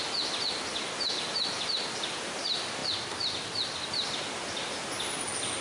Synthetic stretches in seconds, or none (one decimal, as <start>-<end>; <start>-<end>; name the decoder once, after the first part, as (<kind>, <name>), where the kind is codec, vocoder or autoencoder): none